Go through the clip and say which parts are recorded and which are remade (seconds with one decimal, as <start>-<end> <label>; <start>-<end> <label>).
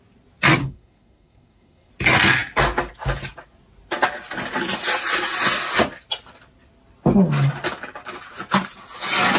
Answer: 0.0-0.6 recorded; 0.6-1.9 remade; 1.9-9.4 recorded